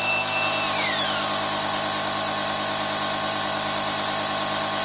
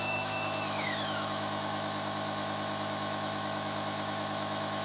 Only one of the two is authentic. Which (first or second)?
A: first